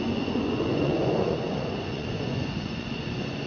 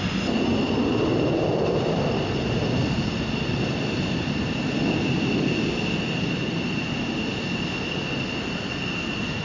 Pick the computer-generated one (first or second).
first